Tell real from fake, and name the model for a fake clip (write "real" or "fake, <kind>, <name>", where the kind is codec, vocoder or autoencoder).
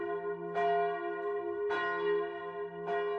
real